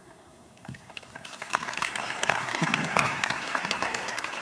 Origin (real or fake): fake